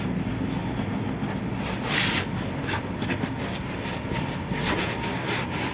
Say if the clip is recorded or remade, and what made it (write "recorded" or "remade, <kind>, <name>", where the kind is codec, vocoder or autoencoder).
recorded